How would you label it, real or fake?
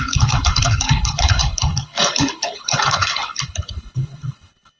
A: fake